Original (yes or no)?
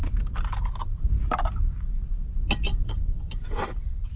yes